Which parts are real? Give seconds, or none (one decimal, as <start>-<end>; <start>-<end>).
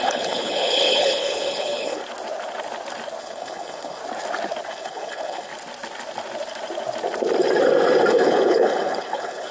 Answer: 2.0-3.2; 4.0-4.7; 5.5-8.1